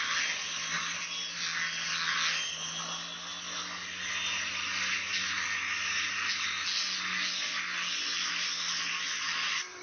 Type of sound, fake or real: real